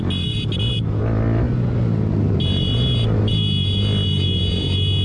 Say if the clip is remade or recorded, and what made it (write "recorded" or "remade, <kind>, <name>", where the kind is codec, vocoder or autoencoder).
recorded